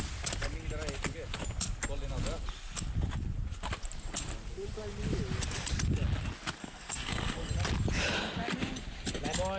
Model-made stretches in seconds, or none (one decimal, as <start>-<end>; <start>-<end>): 6.6-7.5

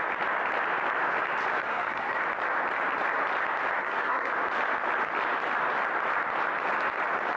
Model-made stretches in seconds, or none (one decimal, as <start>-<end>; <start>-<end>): 1.6-2.2; 3.8-4.3

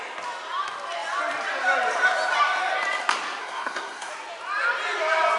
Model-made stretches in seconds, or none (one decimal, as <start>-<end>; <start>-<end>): 3.4-4.1

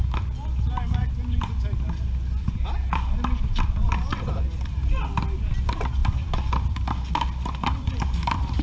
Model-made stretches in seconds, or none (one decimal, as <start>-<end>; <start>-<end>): none

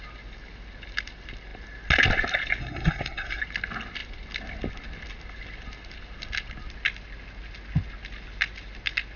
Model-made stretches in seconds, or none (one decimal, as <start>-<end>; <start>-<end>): 2.6-3.4